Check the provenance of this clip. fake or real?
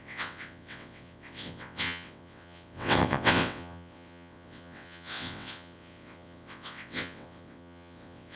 fake